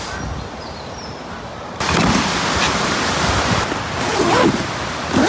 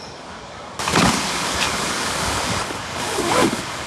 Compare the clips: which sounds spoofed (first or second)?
second